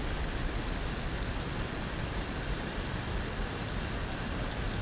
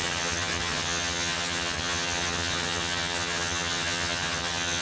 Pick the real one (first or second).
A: first